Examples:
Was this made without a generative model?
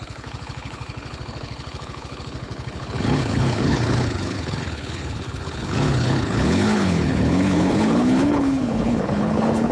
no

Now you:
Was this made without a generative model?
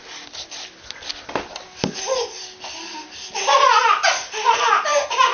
yes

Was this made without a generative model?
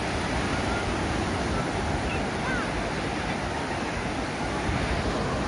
yes